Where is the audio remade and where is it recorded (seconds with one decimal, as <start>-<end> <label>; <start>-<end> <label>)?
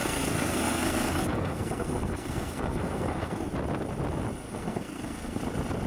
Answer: 0.0-3.5 remade; 3.5-4.4 recorded; 4.4-5.4 remade; 5.4-5.9 recorded